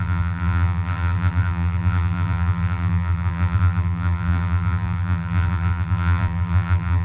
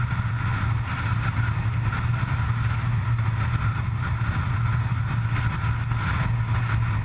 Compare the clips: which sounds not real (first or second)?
first